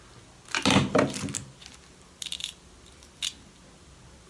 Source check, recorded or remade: recorded